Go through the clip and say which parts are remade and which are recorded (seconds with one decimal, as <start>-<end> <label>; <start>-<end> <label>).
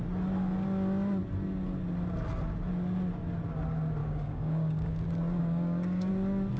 0.0-4.0 recorded; 4.0-5.0 remade; 5.0-5.4 recorded; 5.4-6.1 remade; 6.1-6.6 recorded